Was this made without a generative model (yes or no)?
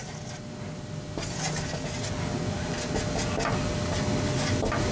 yes